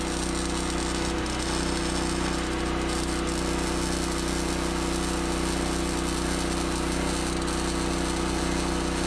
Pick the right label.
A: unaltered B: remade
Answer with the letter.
A